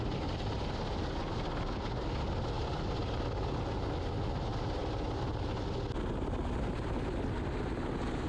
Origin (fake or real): real